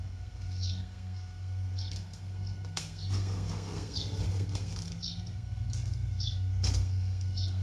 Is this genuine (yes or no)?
no